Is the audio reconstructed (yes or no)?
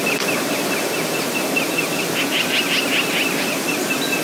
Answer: no